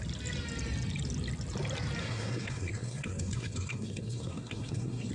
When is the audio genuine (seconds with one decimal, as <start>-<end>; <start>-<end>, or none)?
0.0-2.0